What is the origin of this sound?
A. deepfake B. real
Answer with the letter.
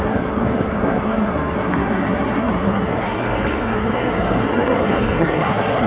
A